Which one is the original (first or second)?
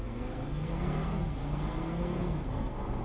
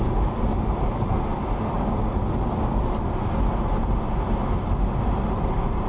second